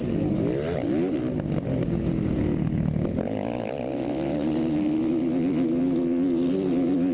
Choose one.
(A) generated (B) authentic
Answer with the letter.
B